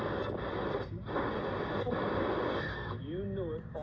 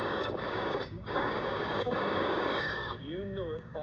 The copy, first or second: second